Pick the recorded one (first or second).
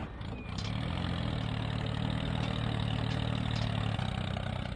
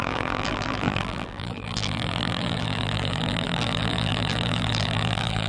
first